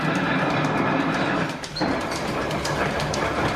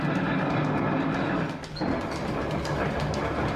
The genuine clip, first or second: second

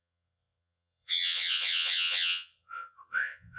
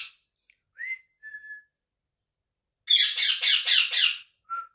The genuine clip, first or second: second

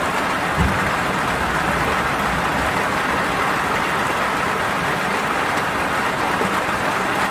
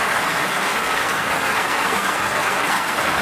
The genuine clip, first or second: first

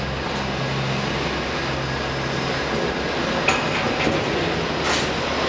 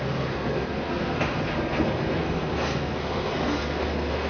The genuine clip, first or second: first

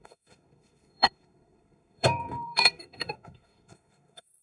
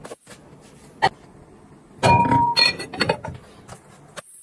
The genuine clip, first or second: second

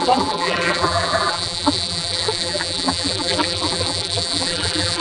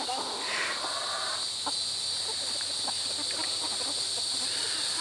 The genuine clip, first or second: second